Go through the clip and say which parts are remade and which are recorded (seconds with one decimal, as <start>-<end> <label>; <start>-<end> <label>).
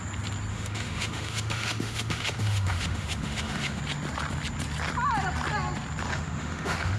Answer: 0.0-0.5 recorded; 0.5-3.8 remade; 3.8-6.1 recorded; 6.1-7.0 remade